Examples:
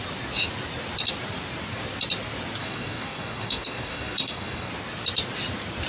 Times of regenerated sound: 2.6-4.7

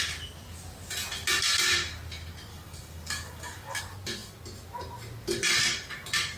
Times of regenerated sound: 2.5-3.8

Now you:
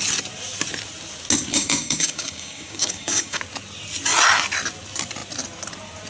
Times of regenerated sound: 1.5-3.4

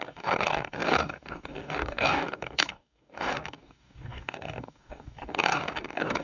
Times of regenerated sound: 0.0-6.2

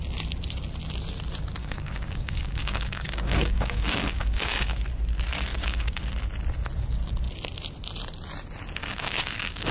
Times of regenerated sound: 1.6-4.8; 5.5-6.0; 8.8-9.7